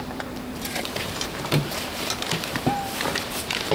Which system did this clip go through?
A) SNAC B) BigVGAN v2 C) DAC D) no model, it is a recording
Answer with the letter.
B